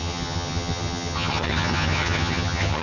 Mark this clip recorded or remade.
remade